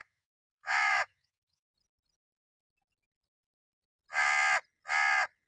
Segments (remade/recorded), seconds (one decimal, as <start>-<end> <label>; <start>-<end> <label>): 0.0-1.7 remade; 1.7-5.5 recorded